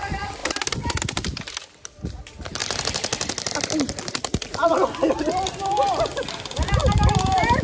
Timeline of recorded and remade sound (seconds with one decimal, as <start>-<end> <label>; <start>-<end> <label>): 0.0-6.8 recorded; 6.8-7.6 remade